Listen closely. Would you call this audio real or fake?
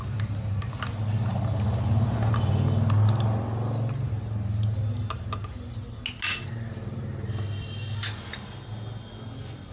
real